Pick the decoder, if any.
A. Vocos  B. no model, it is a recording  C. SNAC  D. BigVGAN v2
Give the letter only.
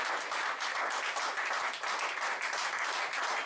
B